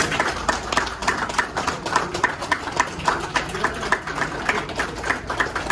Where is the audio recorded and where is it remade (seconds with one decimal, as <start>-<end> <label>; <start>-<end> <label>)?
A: 0.0-5.7 remade